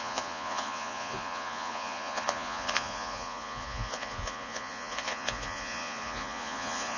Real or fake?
fake